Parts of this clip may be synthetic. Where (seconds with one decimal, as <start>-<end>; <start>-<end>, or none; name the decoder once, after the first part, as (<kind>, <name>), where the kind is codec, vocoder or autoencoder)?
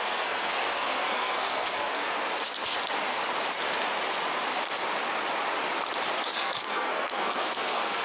0.0-2.0 (codec, SNAC); 6.3-8.0